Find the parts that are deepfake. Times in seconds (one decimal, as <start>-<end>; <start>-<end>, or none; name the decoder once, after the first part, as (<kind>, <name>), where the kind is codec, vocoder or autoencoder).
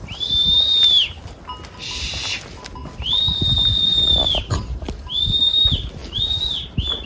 none